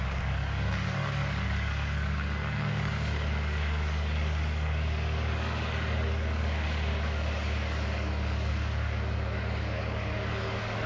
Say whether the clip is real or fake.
fake